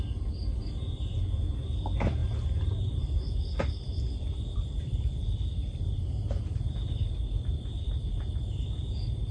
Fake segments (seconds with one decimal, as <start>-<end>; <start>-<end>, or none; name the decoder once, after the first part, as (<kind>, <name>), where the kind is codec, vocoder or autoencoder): 2.2-6.0 (vocoder, BigVGAN v2)